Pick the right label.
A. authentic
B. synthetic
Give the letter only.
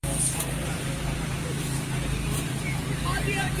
B